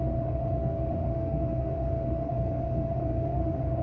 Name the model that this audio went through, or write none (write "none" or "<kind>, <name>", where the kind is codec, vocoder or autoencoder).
autoencoder, DAC-VAE